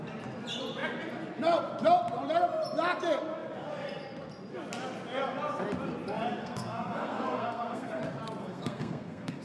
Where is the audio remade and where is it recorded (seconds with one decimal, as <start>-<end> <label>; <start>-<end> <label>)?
0.0-6.4 recorded; 6.4-8.0 remade; 8.0-8.4 recorded; 8.4-9.4 remade